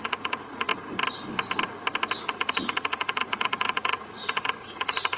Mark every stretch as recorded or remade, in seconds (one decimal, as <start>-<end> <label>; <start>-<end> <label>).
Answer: 0.0-0.7 remade; 0.7-2.2 recorded; 2.2-5.2 remade